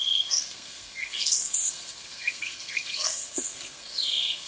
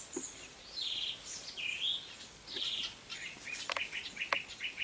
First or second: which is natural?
second